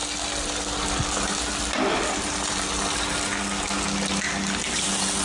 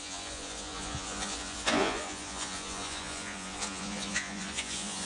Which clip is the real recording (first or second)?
first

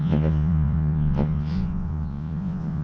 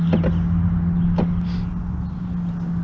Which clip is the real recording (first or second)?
second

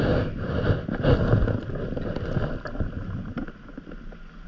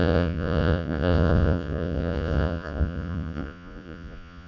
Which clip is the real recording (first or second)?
first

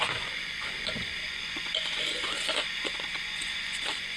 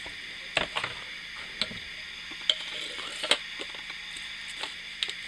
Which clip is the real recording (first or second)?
second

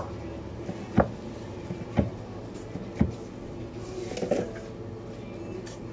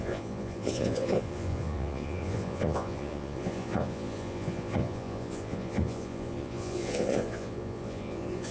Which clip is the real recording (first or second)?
first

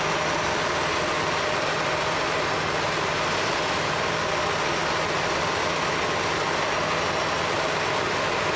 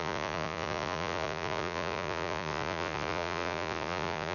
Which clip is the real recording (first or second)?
first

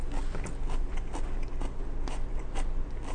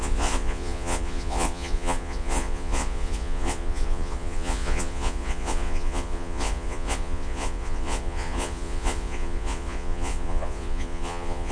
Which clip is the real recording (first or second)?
first